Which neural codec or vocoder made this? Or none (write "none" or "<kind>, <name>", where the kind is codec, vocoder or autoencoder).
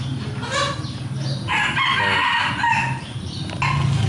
none